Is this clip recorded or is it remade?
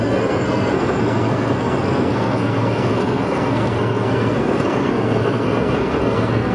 remade